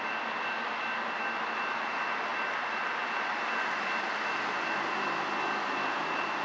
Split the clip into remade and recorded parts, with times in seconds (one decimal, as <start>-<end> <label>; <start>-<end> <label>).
0.0-6.4 recorded